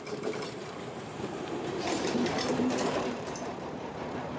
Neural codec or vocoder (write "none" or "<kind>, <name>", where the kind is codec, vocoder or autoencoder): vocoder, BigVGAN v2